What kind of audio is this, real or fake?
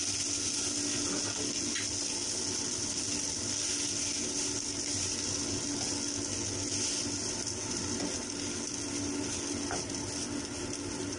real